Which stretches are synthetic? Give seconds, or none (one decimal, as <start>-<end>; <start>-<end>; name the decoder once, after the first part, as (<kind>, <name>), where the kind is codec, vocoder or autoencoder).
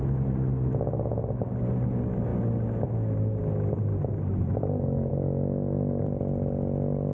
none